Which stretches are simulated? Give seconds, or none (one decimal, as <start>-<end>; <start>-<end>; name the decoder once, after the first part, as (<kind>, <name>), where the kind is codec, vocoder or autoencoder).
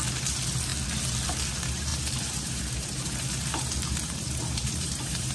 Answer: 1.9-5.3 (vocoder, BigVGAN v2)